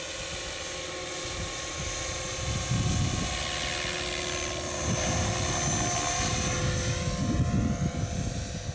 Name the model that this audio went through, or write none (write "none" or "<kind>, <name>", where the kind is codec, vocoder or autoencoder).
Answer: none